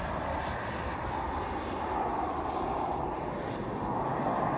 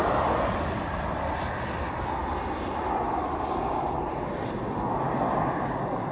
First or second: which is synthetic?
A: first